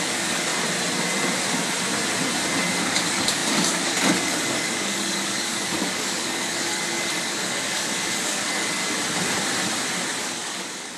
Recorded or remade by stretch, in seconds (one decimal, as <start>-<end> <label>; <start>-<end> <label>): 0.0-0.5 remade; 0.5-2.8 recorded; 2.8-8.8 remade; 8.8-10.2 recorded; 10.2-11.0 remade